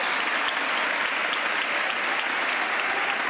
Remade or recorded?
recorded